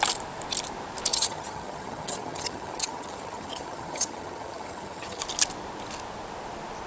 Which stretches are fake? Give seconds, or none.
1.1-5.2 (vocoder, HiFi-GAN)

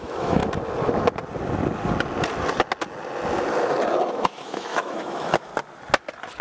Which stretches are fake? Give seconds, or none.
0.0-0.4 (autoencoder, DAC-VAE); 4.1-5.5

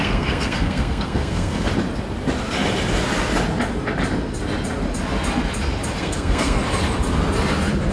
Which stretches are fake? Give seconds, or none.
0.0-1.7 (codec, SNAC); 6.0-6.6

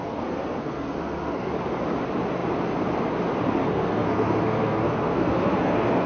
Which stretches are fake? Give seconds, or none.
0.0-1.5 (codec, SNAC); 3.6-6.1

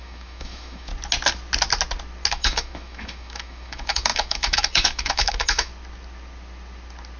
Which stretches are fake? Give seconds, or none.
0.0-0.9 (autoencoder, DAC-VAE); 2.3-5.7

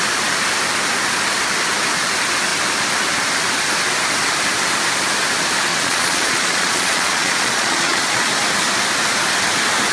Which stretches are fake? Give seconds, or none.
5.7-8.3 (vocoder, Vocos)

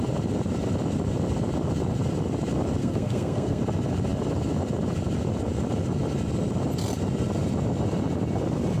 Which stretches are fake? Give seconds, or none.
2.8-3.6 (codec, SNAC)